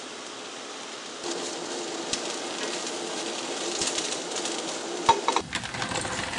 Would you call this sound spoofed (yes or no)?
yes